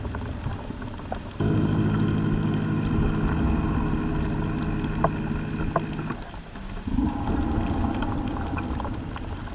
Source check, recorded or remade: recorded